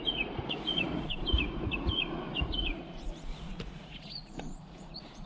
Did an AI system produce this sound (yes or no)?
yes